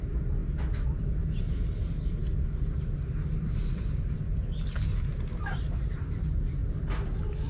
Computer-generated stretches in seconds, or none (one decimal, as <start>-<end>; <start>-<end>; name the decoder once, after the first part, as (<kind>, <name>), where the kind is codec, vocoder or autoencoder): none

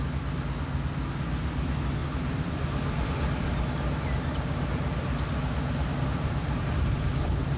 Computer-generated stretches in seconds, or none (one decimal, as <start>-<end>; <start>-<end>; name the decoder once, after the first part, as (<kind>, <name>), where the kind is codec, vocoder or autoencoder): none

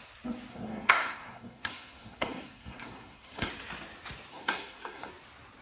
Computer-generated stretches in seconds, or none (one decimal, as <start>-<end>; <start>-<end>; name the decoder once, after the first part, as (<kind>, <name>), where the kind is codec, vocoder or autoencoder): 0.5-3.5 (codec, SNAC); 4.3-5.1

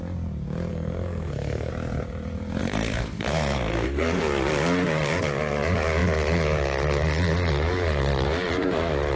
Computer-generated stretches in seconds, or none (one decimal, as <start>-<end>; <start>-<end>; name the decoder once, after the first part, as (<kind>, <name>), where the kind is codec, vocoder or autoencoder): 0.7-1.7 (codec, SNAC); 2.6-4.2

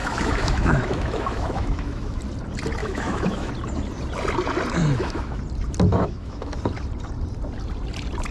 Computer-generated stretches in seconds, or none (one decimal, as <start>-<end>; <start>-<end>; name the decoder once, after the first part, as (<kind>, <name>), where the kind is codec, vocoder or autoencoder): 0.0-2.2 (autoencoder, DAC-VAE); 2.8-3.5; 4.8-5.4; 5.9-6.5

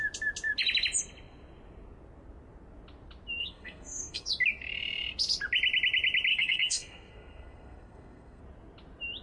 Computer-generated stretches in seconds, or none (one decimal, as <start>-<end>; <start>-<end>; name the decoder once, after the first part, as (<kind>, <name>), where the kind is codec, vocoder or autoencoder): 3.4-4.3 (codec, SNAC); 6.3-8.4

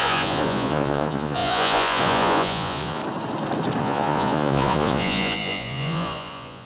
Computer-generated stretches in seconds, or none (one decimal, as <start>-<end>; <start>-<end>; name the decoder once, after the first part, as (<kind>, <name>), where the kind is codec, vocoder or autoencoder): 0.0-3.0 (vocoder, Vocos); 3.8-6.7